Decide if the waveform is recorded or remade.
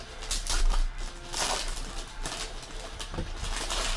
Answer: recorded